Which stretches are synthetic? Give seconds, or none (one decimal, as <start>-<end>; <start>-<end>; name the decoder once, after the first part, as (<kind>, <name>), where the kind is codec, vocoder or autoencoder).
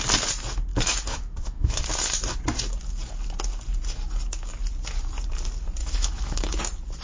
0.7-1.8 (autoencoder, DAC-VAE); 5.8-6.6